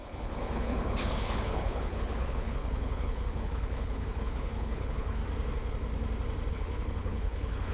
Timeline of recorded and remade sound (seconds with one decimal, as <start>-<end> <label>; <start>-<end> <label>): 0.0-5.2 remade; 5.2-6.5 recorded; 6.5-7.7 remade